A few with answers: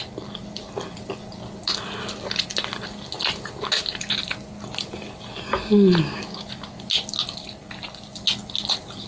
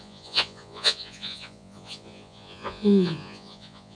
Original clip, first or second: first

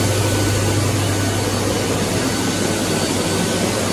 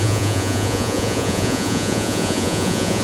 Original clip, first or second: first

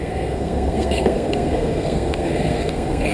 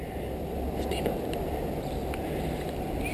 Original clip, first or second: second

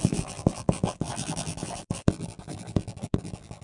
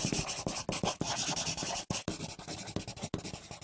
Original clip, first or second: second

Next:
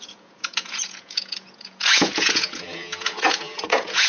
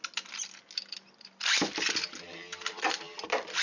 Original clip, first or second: second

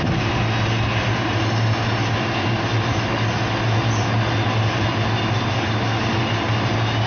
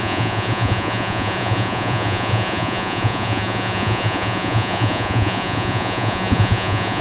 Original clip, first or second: first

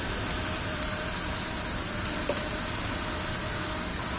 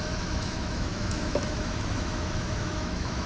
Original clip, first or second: first